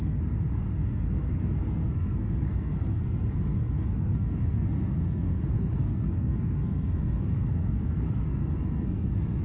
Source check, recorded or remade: remade